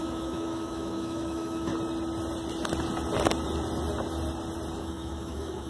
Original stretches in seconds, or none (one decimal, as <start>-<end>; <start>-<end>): 1.7-4.8

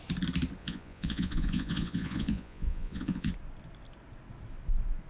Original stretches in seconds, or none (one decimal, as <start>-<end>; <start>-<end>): 0.0-0.6; 3.3-5.1

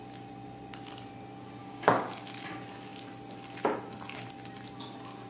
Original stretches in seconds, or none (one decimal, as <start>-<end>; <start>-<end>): 0.0-1.6; 2.2-5.3

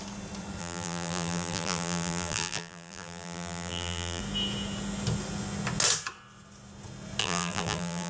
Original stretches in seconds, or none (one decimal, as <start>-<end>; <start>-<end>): 0.0-0.6; 4.2-7.2